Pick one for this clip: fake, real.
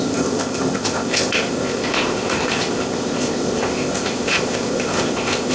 fake